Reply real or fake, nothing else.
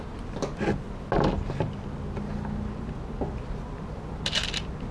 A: real